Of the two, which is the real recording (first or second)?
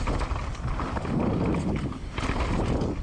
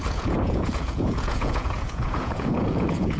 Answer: first